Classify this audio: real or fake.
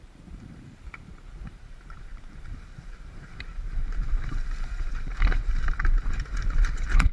fake